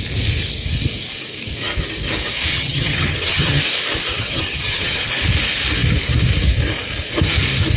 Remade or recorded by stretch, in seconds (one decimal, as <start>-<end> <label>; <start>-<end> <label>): 0.0-2.5 recorded; 2.5-3.6 remade; 3.6-4.1 recorded; 4.1-5.1 remade; 5.1-7.8 recorded